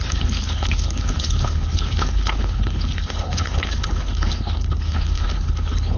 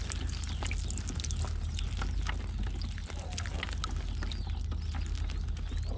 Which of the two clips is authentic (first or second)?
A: second